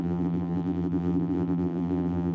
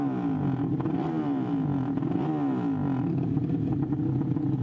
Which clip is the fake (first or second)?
first